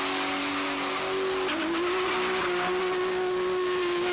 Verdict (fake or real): real